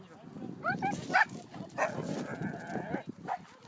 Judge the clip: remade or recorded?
recorded